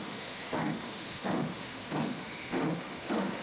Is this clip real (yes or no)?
no